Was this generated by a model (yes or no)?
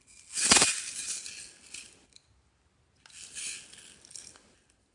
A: no